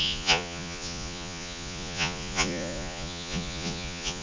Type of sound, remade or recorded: remade